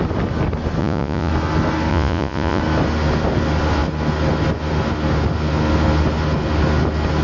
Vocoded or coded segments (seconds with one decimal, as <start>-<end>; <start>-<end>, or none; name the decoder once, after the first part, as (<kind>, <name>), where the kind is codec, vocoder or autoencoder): 0.8-1.3 (vocoder, Vocos); 1.9-2.6

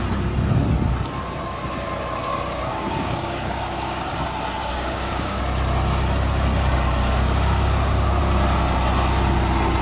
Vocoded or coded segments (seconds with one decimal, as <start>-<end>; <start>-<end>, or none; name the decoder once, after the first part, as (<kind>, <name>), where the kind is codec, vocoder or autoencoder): 2.7-4.1 (codec, DAC); 4.6-5.4; 7.0-8.2

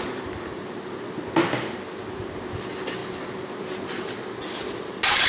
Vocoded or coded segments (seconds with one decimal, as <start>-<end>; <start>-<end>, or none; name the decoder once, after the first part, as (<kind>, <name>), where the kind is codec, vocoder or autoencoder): none

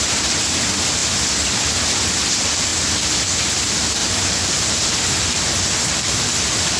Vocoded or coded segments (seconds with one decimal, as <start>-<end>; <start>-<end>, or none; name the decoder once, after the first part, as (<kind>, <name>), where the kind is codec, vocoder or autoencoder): 4.0-5.5 (vocoder, BigVGAN v2)